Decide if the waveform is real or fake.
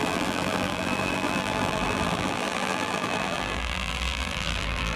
fake